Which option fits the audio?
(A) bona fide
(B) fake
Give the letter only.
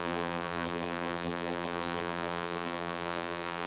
B